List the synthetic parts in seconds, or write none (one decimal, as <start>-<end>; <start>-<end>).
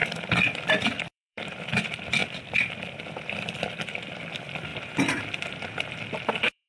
0.7-6.7